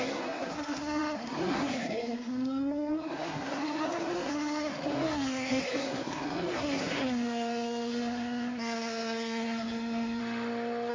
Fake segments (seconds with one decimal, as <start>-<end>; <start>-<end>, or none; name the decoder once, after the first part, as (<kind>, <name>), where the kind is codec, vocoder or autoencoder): 0.0-10.2 (codec, SNAC)